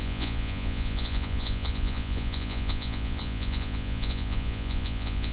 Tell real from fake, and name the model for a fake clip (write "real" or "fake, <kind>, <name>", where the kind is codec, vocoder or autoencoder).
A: fake, vocoder, Vocos